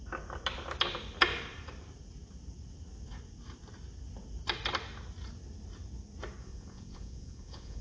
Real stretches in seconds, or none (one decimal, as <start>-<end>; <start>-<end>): 0.0-6.4